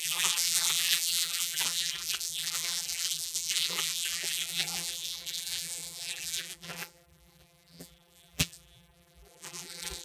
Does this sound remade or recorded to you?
remade